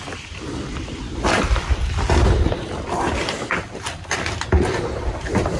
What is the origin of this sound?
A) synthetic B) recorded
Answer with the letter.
A